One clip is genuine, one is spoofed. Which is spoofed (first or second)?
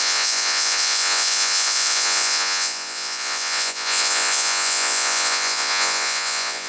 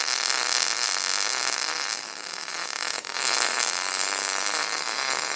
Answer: first